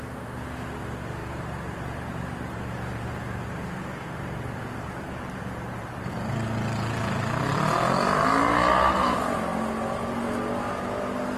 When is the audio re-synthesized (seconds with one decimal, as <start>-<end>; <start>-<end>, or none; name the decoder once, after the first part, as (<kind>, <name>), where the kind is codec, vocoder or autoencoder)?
1.2-6.1 (vocoder, BigVGAN v2)